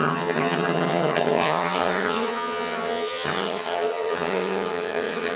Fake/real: fake